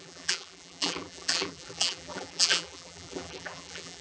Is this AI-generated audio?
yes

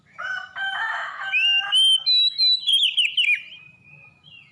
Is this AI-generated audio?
no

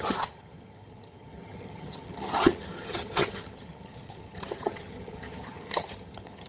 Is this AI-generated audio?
yes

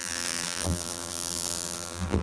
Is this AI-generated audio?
yes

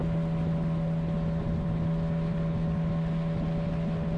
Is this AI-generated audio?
no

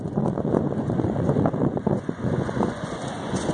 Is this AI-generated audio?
yes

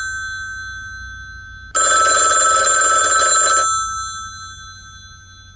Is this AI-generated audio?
no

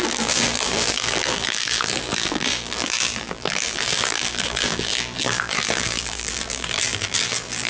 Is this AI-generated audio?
yes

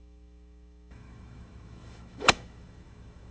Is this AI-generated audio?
yes